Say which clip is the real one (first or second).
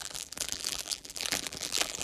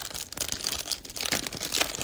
second